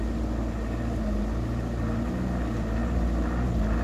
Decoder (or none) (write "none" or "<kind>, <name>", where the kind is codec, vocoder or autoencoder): none